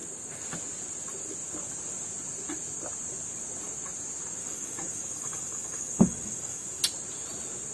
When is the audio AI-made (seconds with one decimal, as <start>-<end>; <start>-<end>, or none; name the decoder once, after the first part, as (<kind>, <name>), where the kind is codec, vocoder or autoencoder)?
4.4-6.8 (codec, DAC)